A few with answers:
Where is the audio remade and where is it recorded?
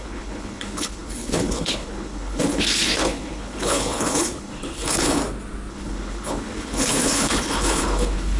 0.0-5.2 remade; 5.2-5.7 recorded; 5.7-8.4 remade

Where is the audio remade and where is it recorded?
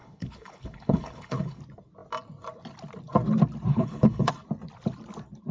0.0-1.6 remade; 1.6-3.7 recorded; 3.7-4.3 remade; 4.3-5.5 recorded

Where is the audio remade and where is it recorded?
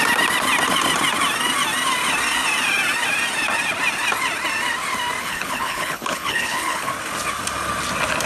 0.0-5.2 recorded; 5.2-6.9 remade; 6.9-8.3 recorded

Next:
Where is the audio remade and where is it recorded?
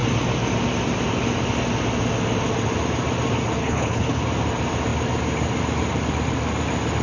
0.0-3.6 recorded; 3.6-4.2 remade; 4.2-7.0 recorded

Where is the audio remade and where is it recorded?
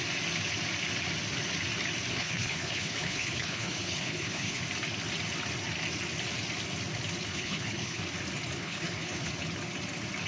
0.0-2.1 recorded; 2.1-4.6 remade; 4.6-7.3 recorded; 7.3-8.0 remade; 8.0-8.6 recorded; 8.6-9.3 remade; 9.3-10.3 recorded